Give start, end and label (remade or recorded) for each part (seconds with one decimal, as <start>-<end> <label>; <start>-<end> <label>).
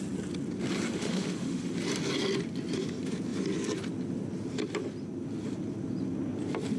0.0-1.0 recorded; 1.0-1.7 remade; 1.7-6.8 recorded